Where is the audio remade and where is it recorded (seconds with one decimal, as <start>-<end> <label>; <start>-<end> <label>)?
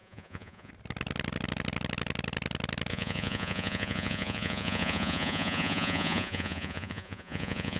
0.0-0.7 remade; 0.7-2.9 recorded; 2.9-7.8 remade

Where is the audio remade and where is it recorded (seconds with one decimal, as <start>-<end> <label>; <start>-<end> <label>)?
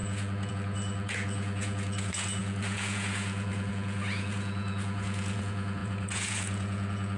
0.0-7.2 remade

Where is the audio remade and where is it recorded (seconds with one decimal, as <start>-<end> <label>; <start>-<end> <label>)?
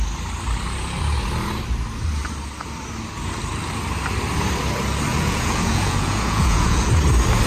0.0-5.1 recorded; 5.1-6.9 remade; 6.9-7.5 recorded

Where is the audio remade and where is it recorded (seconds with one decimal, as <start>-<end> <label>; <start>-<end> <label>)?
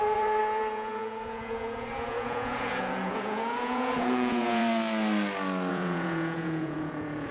0.0-4.6 remade; 4.6-5.7 recorded; 5.7-7.3 remade